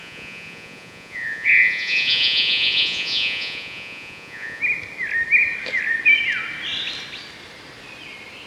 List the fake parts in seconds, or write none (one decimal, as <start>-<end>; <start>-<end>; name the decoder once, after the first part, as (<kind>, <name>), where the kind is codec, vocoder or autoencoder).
0.0-4.6 (vocoder, Vocos)